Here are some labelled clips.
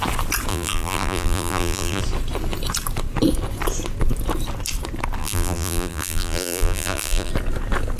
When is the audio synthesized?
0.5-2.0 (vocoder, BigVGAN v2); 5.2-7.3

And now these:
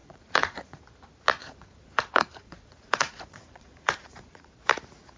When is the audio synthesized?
0.0-0.8 (vocoder, Vocos); 1.4-4.5

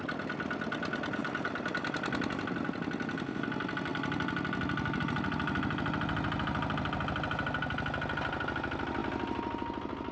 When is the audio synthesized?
1.2-1.7 (vocoder, BigVGAN v2)

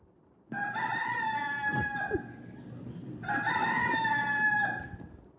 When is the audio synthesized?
none

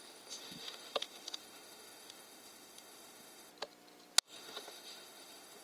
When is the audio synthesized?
0.0-3.5 (autoencoder, DAC-VAE); 4.2-5.6